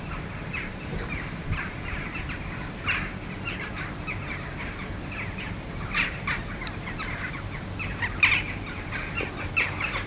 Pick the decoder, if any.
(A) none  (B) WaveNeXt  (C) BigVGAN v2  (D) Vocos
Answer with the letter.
A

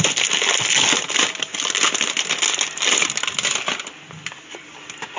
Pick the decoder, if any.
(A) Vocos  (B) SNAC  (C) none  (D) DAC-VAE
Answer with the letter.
C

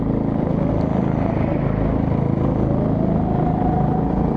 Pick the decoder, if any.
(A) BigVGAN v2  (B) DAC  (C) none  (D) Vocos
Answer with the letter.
C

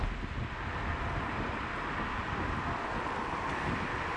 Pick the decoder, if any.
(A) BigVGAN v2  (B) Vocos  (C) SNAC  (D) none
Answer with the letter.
D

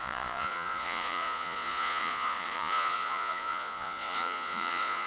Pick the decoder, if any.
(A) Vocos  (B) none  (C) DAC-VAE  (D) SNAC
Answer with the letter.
A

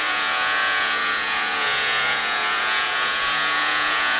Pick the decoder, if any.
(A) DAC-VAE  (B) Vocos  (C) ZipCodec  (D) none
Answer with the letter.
B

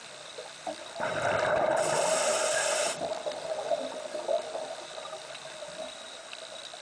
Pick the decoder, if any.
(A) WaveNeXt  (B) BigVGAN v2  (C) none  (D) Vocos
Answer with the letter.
C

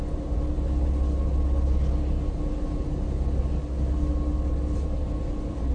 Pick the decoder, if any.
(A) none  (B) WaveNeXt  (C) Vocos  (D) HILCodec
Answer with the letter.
A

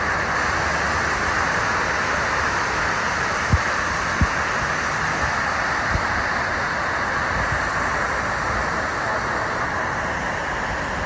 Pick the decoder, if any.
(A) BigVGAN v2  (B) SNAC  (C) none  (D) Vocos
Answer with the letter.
C